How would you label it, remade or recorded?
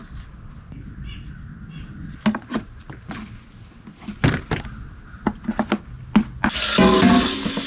recorded